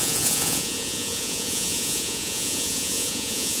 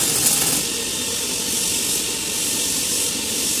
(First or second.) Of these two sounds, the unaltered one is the second